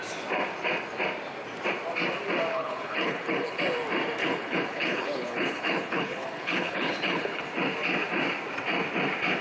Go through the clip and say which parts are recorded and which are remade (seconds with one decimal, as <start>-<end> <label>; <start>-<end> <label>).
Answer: 0.0-2.5 recorded; 2.5-3.6 remade; 3.6-4.2 recorded; 4.2-7.4 remade; 7.4-9.4 recorded